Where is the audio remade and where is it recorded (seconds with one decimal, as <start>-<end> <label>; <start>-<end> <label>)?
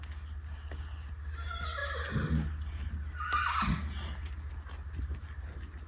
0.0-5.9 recorded